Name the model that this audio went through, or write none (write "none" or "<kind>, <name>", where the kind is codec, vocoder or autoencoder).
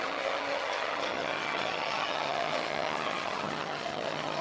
vocoder, HiFi-GAN